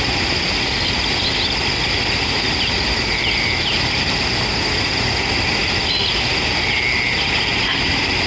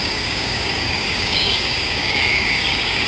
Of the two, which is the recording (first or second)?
first